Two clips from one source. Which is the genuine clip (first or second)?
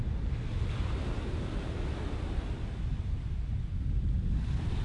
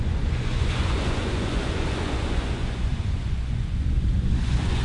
first